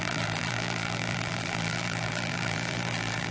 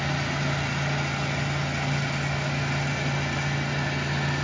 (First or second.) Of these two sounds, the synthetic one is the first